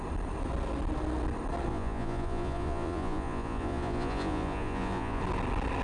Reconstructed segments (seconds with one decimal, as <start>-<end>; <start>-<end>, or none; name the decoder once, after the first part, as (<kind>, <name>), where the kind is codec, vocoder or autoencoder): 1.7-5.2 (vocoder, Vocos)